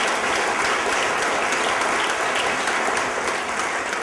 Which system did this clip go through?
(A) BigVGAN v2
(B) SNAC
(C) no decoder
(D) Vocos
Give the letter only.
C